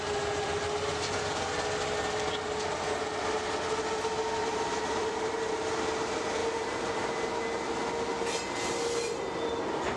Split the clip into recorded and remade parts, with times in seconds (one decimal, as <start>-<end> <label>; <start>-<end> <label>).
0.0-4.4 recorded; 4.4-5.8 remade; 5.8-6.4 recorded; 6.4-7.1 remade; 7.1-10.0 recorded